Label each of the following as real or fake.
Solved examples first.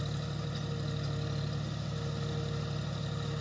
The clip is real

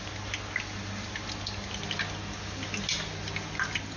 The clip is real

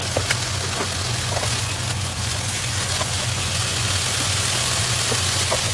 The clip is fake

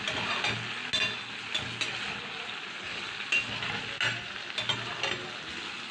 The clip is real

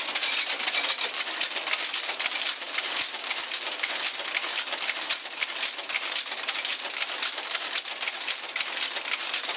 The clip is real